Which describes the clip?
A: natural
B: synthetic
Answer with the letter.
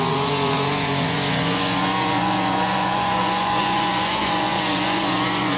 B